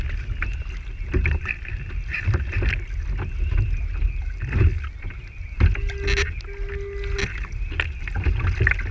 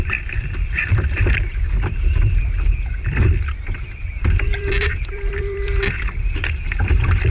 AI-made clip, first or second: second